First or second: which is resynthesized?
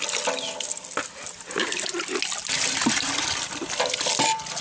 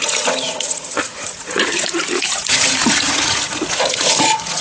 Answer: second